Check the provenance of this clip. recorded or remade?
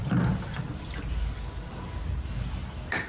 recorded